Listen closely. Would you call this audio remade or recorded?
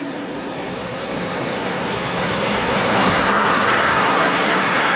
remade